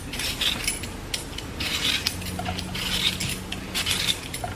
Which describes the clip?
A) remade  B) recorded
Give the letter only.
B